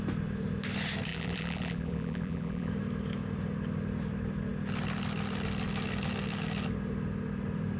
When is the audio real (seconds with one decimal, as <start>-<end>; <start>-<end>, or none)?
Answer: 0.0-1.1; 2.7-7.8